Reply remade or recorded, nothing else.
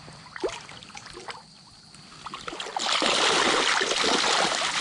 recorded